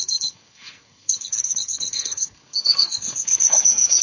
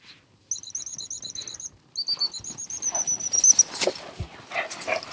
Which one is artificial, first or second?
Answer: first